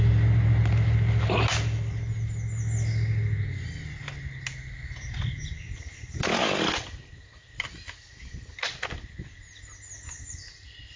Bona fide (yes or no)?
yes